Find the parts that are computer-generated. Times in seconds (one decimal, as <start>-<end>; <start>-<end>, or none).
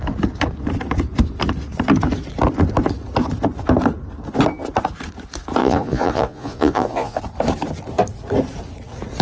5.6-7.2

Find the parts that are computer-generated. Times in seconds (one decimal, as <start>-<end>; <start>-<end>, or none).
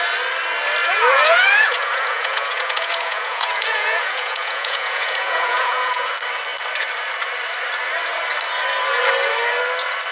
0.8-6.1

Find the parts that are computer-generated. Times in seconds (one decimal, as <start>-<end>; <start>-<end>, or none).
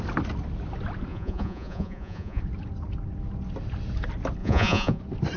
1.1-2.4; 4.4-5.0